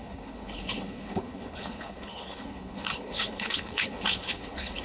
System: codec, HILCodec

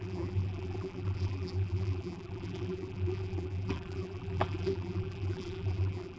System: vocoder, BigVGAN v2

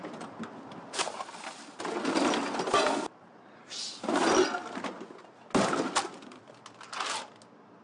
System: none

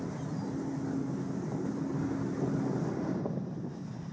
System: none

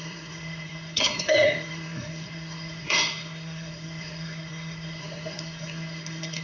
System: codec, SNAC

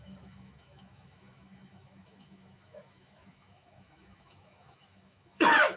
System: autoencoder, DAC-VAE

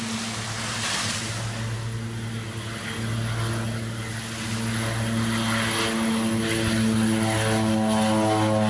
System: none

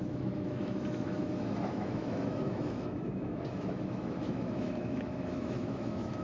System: autoencoder, DAC-VAE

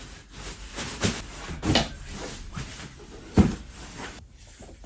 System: none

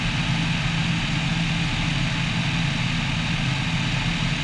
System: none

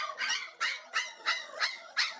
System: vocoder, HiFi-GAN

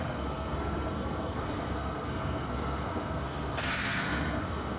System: codec, SNAC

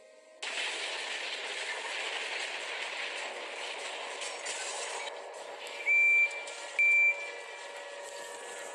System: none